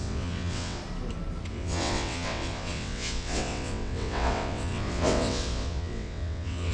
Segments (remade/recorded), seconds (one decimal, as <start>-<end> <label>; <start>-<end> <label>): 0.0-0.8 remade; 0.8-1.5 recorded; 1.5-6.7 remade